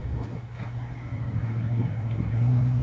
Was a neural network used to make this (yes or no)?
yes